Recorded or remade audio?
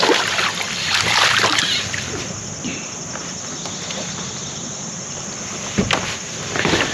recorded